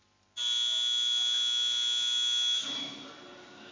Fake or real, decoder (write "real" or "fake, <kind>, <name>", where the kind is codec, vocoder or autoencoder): real